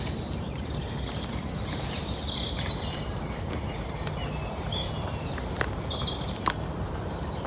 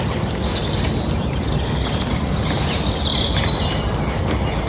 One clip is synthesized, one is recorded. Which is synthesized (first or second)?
first